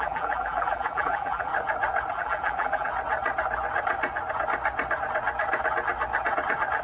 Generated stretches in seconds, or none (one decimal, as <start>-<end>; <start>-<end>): 0.0-1.5; 2.1-2.9